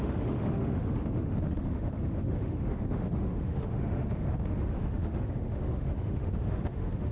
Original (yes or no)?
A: no